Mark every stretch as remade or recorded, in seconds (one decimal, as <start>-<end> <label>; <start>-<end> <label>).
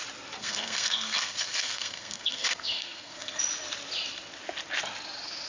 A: 0.0-0.4 recorded; 0.4-3.4 remade; 3.4-5.5 recorded